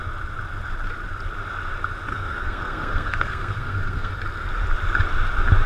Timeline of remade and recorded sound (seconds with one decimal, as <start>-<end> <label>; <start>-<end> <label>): 0.0-2.1 recorded; 2.1-4.1 remade; 4.1-5.7 recorded